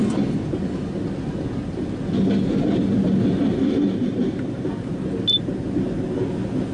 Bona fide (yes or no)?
yes